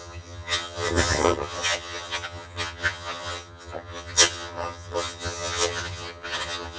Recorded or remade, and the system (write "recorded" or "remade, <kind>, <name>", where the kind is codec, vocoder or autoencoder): remade, vocoder, HiFi-GAN